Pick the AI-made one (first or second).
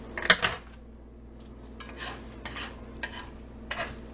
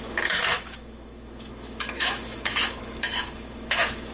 second